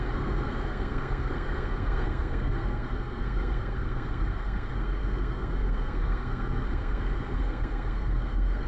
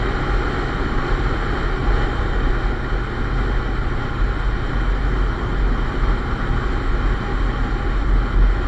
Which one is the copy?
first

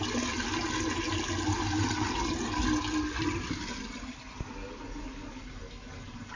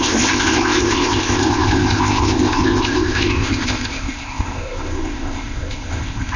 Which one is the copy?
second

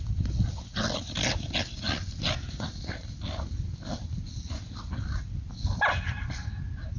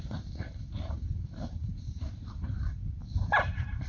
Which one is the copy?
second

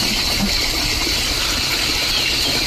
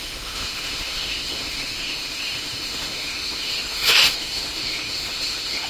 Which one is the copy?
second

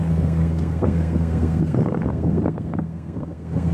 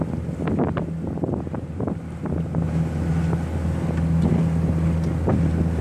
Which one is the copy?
first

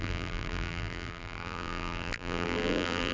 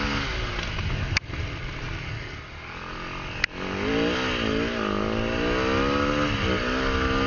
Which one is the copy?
first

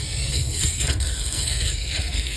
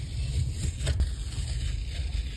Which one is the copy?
first